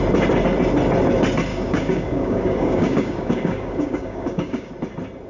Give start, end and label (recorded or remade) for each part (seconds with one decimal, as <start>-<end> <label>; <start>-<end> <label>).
0.0-1.5 recorded; 1.5-4.7 remade; 4.7-5.3 recorded